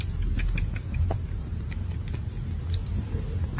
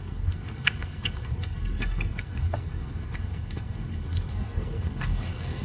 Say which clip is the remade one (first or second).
second